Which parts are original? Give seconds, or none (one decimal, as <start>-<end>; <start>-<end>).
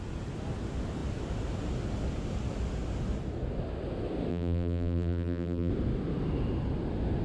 0.0-4.3; 5.7-7.2